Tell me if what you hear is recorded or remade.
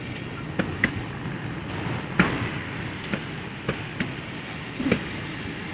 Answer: recorded